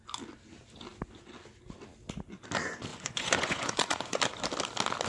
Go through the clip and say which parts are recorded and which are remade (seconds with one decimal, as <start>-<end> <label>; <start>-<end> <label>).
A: 0.0-2.9 recorded; 2.9-4.2 remade; 4.2-5.1 recorded

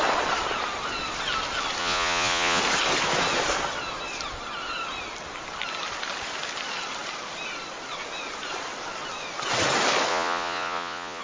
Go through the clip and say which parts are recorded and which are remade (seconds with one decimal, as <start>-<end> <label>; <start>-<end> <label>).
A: 0.0-1.8 recorded; 1.8-2.6 remade; 2.6-10.1 recorded; 10.1-11.2 remade